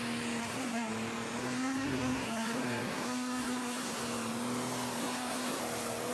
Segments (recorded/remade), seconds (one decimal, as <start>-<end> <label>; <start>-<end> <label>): 0.0-0.4 recorded; 0.4-0.9 remade; 0.9-1.4 recorded; 1.4-4.0 remade; 4.0-5.0 recorded; 5.0-5.6 remade; 5.6-6.1 recorded